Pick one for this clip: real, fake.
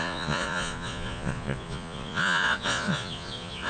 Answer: fake